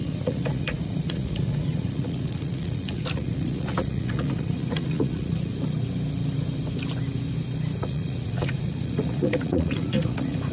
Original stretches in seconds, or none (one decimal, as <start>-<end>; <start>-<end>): 5.5-7.8